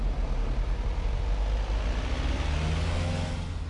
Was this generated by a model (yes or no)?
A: no